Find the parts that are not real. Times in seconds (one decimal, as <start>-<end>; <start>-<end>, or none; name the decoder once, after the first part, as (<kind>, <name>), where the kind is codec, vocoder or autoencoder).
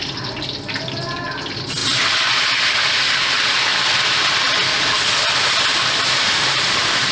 none